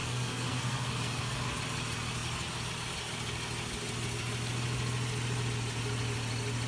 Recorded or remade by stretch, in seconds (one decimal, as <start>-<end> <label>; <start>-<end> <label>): 0.0-1.5 remade; 1.5-6.7 recorded